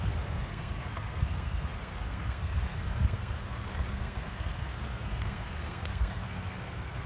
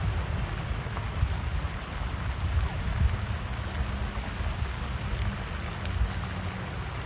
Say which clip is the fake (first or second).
first